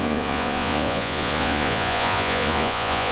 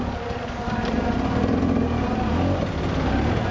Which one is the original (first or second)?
second